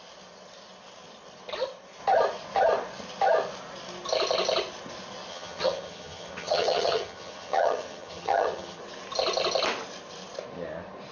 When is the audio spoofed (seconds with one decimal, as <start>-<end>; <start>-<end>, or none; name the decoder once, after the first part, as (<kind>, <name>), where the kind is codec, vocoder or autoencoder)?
5.3-8.8 (vocoder, HiFi-GAN)